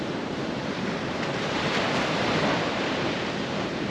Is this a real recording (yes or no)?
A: no